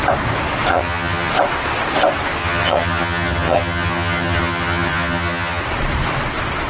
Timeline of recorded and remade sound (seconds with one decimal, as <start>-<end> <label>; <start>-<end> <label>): 0.0-0.7 recorded; 0.7-1.3 remade; 1.3-2.4 recorded; 2.4-5.6 remade; 5.6-6.7 recorded